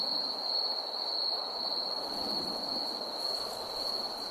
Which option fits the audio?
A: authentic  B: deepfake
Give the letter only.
A